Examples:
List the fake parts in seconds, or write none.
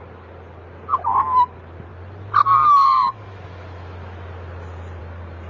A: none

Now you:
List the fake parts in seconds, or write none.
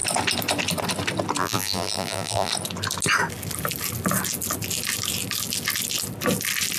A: 1.4-2.5